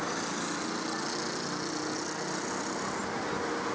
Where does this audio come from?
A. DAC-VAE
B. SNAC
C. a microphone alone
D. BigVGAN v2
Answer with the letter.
C